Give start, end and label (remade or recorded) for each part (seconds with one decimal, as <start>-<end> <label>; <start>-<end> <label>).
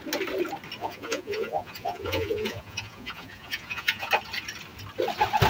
0.0-0.8 recorded; 0.8-4.1 remade; 4.1-5.5 recorded